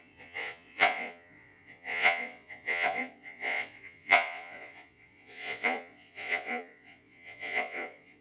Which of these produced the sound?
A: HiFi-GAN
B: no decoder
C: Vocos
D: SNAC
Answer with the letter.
C